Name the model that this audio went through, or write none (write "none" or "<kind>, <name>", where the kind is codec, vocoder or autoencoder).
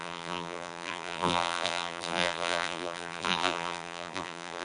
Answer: vocoder, BigVGAN v2